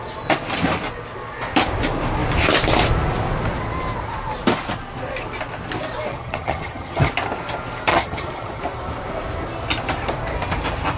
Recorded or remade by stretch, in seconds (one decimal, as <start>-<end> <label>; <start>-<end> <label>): 0.0-6.1 recorded; 6.1-7.1 remade; 7.1-7.9 recorded; 7.9-8.6 remade; 8.6-11.0 recorded